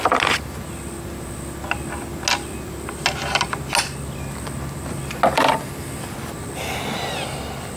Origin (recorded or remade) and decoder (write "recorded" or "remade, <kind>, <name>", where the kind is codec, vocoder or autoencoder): recorded